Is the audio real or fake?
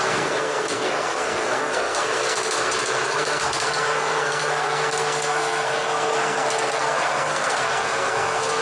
fake